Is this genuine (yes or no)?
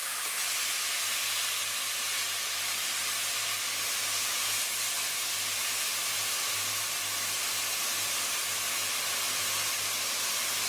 yes